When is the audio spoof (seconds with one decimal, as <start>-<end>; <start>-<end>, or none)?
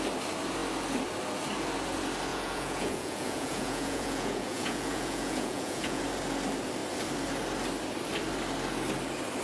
2.3-6.0